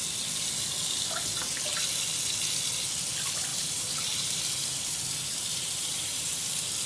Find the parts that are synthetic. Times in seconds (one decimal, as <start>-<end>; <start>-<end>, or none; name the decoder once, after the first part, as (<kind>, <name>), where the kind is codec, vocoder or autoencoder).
3.5-4.4 (vocoder, BigVGAN v2); 5.5-6.3